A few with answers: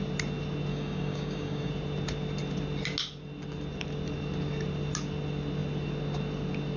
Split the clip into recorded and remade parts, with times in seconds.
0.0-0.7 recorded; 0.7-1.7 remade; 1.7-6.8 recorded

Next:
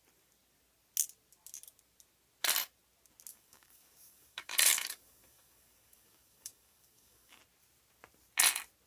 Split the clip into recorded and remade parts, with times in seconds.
0.0-3.3 recorded; 3.3-7.4 remade; 7.4-8.9 recorded

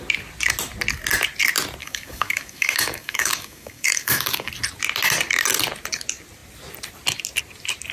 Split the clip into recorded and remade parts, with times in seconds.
0.0-1.8 recorded; 1.8-4.5 remade; 4.5-7.9 recorded

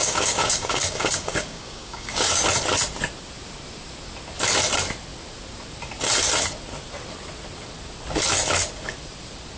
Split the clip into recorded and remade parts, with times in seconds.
0.0-2.3 remade; 2.3-9.6 recorded

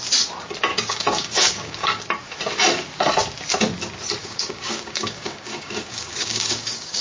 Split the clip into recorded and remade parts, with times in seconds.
0.0-0.7 recorded; 0.7-2.0 remade; 2.0-4.2 recorded; 4.2-7.0 remade

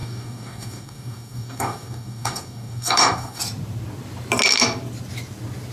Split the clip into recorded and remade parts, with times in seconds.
0.0-3.4 remade; 3.4-5.7 recorded

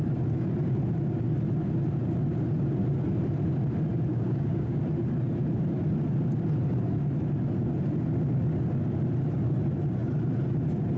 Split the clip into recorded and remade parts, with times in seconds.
0.0-4.1 recorded; 4.1-4.8 remade; 4.8-11.0 recorded

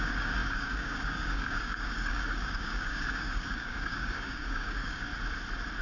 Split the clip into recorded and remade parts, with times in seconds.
0.0-5.1 remade; 5.1-5.8 recorded